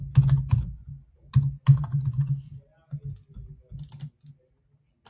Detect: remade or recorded recorded